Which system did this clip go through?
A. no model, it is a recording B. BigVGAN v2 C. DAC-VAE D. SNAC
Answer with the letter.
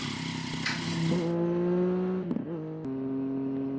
A